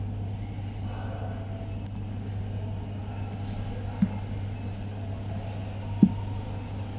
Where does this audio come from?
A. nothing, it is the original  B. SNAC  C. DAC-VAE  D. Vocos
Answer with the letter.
A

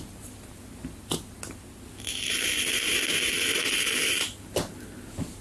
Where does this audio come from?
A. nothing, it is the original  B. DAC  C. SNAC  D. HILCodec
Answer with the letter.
A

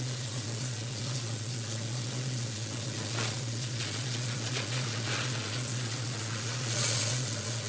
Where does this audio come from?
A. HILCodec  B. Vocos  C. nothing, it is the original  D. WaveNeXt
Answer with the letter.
B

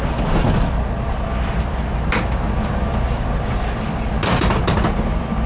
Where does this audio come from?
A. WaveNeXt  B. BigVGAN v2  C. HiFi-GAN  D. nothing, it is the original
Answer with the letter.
D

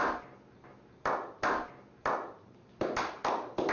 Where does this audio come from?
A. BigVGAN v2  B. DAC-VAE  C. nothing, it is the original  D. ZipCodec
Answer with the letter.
C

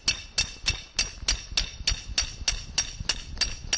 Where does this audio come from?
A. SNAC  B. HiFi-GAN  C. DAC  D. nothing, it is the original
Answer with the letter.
D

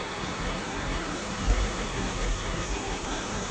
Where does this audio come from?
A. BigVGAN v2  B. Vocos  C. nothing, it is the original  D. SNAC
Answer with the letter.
D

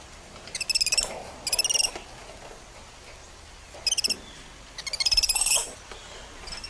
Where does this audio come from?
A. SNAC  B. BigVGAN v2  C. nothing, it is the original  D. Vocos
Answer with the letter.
C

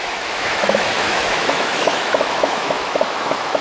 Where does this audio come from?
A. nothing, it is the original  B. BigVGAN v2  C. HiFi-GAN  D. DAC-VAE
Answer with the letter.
D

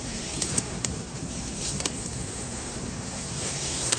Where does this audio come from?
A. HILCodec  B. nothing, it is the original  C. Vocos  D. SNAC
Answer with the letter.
D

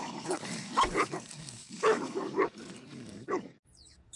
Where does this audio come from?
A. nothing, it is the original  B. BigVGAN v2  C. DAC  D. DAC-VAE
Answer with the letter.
C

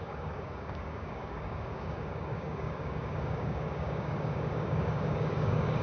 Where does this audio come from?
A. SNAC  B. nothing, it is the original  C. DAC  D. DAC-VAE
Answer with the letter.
C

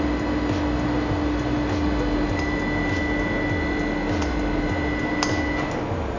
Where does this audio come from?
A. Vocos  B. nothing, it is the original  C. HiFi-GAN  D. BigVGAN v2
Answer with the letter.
B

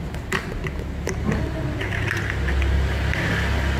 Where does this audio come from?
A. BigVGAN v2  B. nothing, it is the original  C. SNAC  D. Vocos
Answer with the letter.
B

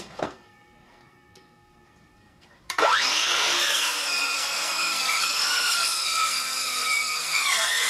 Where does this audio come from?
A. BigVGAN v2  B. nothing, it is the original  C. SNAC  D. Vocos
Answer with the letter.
C